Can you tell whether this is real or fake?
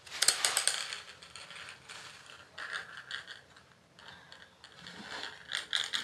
real